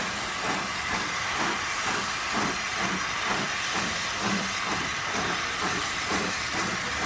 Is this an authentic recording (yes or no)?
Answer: yes